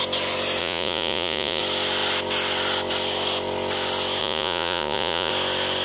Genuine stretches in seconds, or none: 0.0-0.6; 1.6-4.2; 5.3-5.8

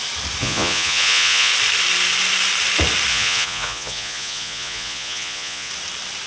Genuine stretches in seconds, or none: 0.0-0.4; 1.5-3.1; 5.7-6.3